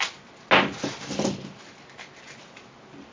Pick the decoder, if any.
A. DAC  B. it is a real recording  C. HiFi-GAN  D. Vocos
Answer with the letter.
B